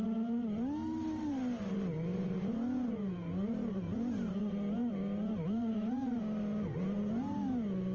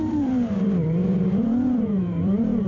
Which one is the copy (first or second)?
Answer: second